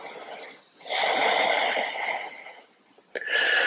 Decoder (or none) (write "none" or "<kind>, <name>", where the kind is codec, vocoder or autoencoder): none